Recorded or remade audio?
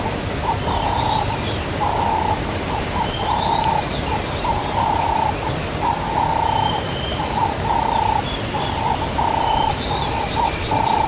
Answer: recorded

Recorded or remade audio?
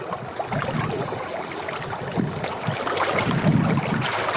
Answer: recorded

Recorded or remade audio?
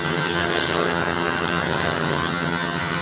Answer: remade